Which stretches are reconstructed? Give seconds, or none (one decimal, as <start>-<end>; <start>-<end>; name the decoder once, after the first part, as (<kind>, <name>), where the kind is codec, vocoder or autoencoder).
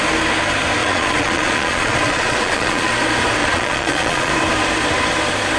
0.8-2.9 (vocoder, Vocos); 3.4-4.3